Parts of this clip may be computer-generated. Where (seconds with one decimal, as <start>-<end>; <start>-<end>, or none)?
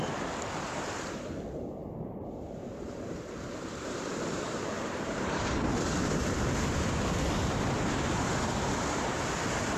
1.8-7.1